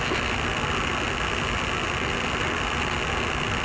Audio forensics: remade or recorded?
recorded